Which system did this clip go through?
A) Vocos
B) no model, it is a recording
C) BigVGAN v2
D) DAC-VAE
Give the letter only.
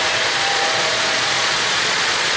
A